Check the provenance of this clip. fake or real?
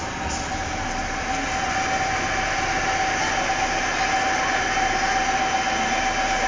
real